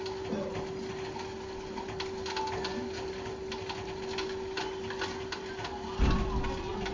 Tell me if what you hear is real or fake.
real